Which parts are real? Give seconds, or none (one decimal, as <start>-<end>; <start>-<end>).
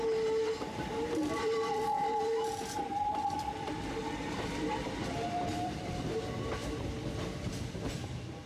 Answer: 0.0-1.2; 6.1-6.6; 7.6-8.5